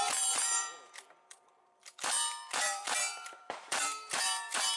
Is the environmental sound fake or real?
fake